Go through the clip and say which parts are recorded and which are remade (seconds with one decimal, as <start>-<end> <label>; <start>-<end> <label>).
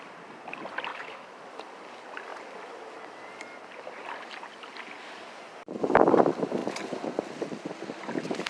0.0-0.9 recorded; 0.9-1.4 remade; 1.4-8.5 recorded